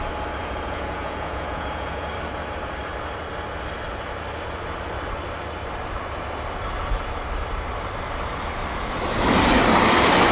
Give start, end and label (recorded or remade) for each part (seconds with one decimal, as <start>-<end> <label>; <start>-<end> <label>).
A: 0.0-0.4 recorded; 0.4-2.1 remade; 2.1-10.3 recorded